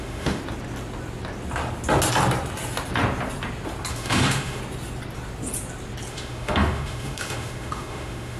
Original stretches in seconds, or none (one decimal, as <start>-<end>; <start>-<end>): 0.4-3.9; 4.6-6.1